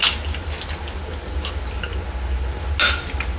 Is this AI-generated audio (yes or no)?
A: no